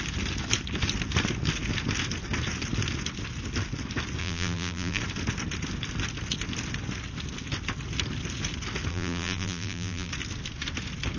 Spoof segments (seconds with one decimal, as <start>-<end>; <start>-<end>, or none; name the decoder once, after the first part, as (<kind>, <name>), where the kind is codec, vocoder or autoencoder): 4.2-5.0 (vocoder, BigVGAN v2); 8.9-10.1